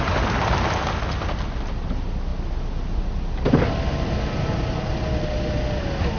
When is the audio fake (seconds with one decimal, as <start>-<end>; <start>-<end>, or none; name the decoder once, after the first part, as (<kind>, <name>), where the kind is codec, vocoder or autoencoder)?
none